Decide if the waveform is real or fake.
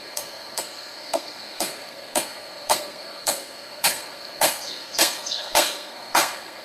fake